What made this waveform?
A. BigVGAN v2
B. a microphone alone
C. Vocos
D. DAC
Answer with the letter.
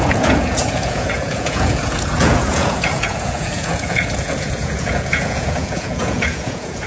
C